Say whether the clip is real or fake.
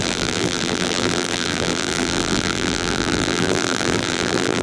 fake